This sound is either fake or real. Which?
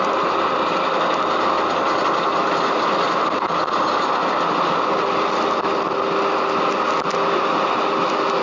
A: real